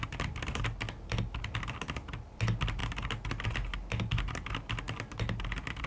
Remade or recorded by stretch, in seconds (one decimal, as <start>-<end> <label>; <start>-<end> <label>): 0.0-5.9 recorded